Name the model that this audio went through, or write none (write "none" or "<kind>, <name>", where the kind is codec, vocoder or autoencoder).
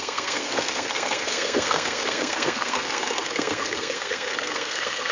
codec, SNAC